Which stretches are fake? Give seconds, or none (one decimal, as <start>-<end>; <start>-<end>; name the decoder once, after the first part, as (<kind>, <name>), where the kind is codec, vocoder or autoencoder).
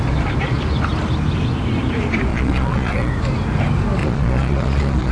2.3-3.1 (vocoder, Vocos); 4.0-5.1